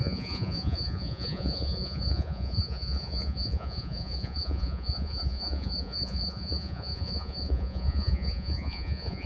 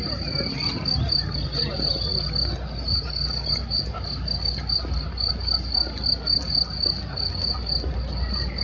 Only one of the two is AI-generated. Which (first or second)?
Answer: first